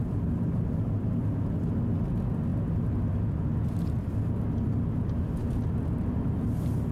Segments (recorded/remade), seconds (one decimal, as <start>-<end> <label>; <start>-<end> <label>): 0.0-6.9 recorded

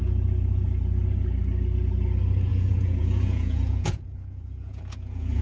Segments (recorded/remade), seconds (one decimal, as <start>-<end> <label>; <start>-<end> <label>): 0.0-2.5 recorded; 2.5-5.4 remade

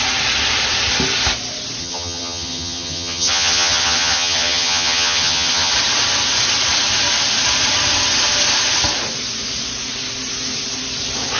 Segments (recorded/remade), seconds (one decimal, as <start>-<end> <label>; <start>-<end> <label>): 0.0-1.8 recorded; 1.8-5.7 remade; 5.7-11.4 recorded

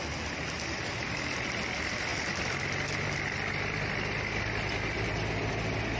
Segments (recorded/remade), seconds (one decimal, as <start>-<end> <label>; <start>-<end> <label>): 0.0-6.0 recorded

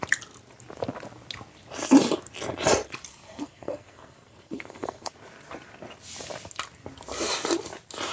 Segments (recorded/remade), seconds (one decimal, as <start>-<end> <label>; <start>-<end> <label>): 0.0-3.1 recorded; 3.1-5.1 remade; 5.1-8.1 recorded

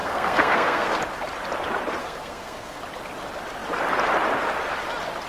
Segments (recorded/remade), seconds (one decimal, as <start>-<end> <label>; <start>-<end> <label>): 0.0-1.0 remade; 1.0-2.0 recorded; 2.0-2.8 remade; 2.8-5.3 recorded